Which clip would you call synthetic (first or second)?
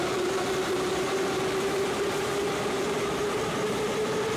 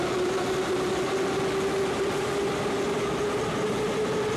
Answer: first